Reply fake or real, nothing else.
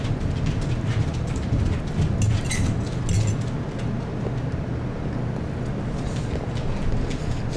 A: real